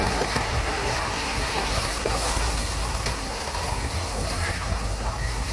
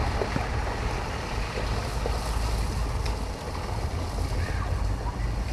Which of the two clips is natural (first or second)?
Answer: second